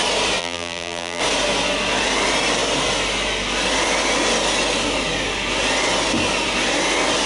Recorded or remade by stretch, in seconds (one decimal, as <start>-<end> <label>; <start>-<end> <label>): 0.0-0.4 recorded; 0.4-1.2 remade; 1.2-7.3 recorded